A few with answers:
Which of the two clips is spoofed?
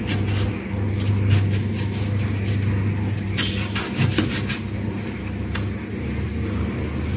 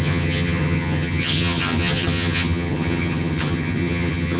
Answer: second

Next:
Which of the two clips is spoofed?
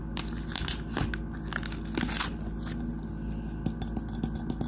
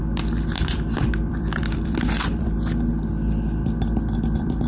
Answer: second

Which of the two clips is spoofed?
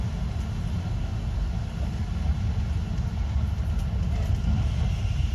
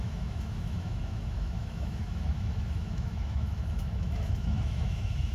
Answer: second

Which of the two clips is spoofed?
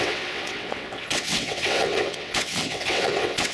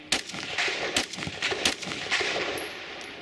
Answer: first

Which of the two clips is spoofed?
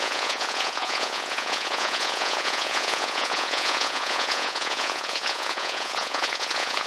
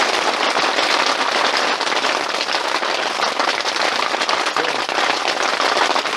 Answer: first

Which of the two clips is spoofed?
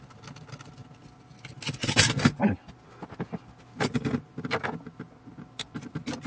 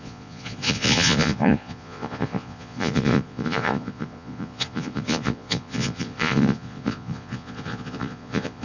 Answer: second